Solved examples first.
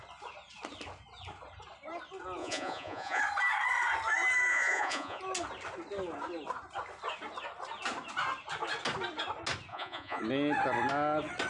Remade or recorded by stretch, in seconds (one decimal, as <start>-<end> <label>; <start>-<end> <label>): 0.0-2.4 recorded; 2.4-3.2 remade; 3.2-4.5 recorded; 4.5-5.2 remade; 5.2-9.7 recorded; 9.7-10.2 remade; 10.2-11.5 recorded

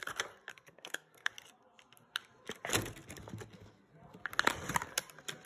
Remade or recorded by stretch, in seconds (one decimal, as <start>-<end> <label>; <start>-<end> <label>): 0.0-0.5 recorded; 0.5-1.3 remade; 1.3-5.5 recorded

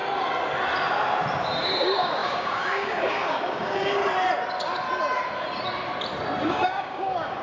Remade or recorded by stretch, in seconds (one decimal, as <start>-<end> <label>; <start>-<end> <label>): 0.0-1.8 recorded; 1.8-4.0 remade; 4.0-6.5 recorded; 6.5-7.4 remade